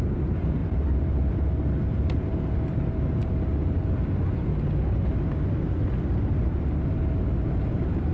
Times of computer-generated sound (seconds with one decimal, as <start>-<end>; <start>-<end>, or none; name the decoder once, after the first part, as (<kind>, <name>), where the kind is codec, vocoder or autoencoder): 0.0-4.5 (vocoder, BigVGAN v2); 6.2-8.1